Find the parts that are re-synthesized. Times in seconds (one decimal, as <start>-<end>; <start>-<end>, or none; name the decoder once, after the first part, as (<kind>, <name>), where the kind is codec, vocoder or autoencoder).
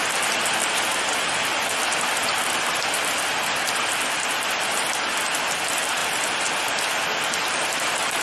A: none